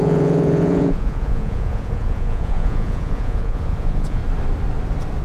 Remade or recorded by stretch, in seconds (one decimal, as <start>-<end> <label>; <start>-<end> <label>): 0.0-4.2 remade; 4.2-5.2 recorded